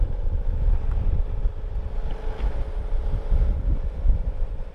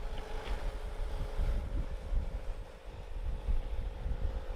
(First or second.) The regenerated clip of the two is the first